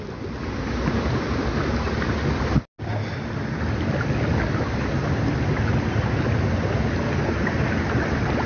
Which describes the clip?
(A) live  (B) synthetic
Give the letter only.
A